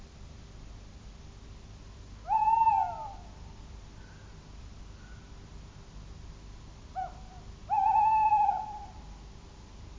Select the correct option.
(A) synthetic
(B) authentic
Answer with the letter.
B